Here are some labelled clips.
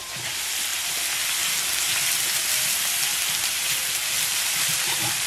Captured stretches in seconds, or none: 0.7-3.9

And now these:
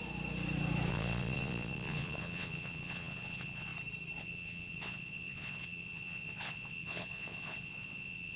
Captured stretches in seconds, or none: 0.0-0.9; 3.7-4.2

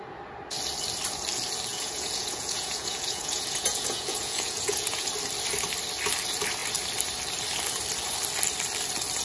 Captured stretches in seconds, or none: 0.0-1.7; 5.1-9.2

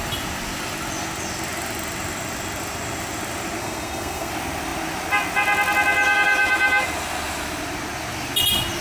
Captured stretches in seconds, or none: 0.0-3.6; 4.3-8.8

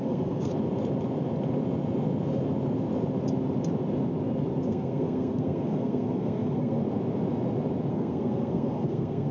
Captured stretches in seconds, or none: 0.5-4.6; 6.8-7.9

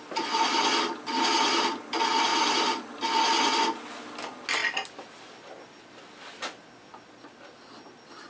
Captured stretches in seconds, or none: 0.0-2.3; 3.0-8.3

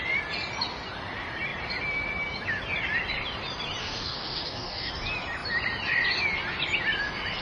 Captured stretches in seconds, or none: 0.0-3.8; 4.9-7.4

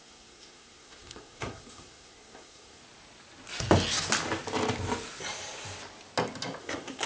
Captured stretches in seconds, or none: 2.8-6.6